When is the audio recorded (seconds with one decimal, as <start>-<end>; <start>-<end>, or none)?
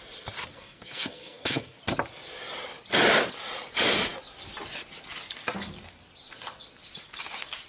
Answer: 0.0-0.5; 1.8-7.7